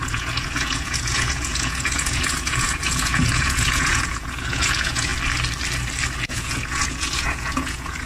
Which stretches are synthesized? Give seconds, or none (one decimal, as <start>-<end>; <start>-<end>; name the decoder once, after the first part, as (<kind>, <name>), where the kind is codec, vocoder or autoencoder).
0.0-5.1 (vocoder, Vocos); 6.2-8.1